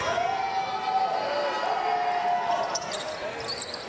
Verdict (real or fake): real